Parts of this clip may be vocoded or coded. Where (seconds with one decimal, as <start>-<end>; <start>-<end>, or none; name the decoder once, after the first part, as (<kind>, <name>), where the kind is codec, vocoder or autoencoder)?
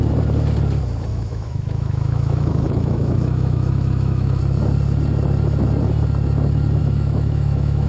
1.1-4.4 (autoencoder, DAC-VAE); 6.8-7.9